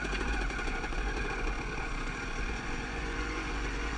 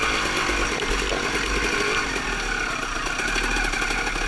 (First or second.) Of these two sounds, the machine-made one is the first